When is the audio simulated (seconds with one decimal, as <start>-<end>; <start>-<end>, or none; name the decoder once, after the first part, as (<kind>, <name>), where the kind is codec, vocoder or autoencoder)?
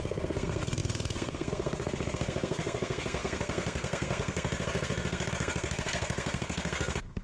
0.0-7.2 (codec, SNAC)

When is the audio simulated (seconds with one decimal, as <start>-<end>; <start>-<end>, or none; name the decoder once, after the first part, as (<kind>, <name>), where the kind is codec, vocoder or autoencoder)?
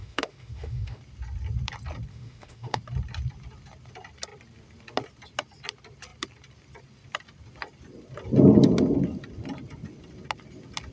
0.0-1.0 (autoencoder, DAC-VAE); 2.1-2.8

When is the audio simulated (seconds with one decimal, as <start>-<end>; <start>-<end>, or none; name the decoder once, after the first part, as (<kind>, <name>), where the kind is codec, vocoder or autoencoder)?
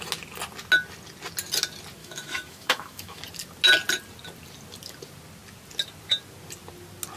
2.0-3.2 (autoencoder, DAC-VAE)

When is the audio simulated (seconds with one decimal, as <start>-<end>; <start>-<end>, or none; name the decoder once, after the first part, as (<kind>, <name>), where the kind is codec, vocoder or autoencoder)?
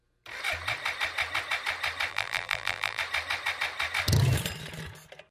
2.1-3.0 (vocoder, BigVGAN v2)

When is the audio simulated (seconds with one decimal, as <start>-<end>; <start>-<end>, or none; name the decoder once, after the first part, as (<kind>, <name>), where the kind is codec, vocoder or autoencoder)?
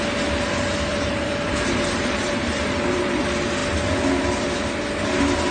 0.9-3.2 (vocoder, BigVGAN v2)